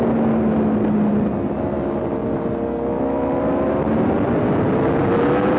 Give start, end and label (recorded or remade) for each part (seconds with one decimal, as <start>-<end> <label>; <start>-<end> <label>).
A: 0.0-5.6 recorded